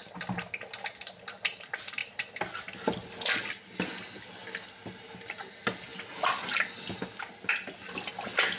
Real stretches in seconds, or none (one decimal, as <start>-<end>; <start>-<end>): 0.0-8.6